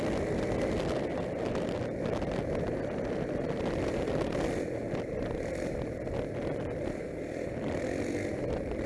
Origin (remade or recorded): recorded